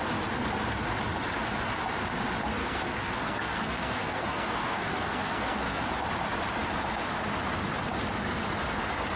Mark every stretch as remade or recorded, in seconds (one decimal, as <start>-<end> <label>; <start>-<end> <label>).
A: 0.0-2.6 recorded; 2.6-5.8 remade; 5.8-9.2 recorded